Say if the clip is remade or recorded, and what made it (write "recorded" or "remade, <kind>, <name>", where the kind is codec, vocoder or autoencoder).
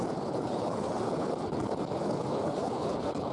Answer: remade, codec, HILCodec